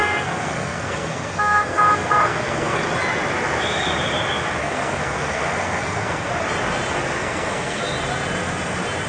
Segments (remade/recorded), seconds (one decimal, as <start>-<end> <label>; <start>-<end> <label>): 0.0-2.8 remade; 2.8-4.6 recorded; 4.6-6.3 remade; 6.3-7.2 recorded; 7.2-7.8 remade; 7.8-9.1 recorded